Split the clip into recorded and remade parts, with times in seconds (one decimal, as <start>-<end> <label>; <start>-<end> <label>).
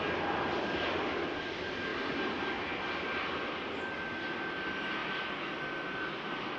0.0-6.6 recorded